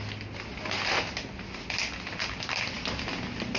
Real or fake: real